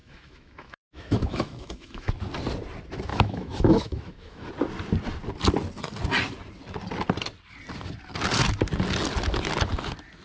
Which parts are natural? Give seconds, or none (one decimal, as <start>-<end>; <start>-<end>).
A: 2.1-3.1; 4.5-10.2